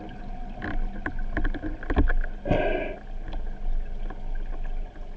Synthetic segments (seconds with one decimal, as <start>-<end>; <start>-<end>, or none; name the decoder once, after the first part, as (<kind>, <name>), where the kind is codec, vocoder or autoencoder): none